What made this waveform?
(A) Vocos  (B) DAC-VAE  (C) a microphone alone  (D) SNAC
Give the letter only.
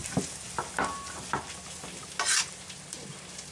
C